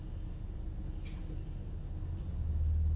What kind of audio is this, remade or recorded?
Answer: recorded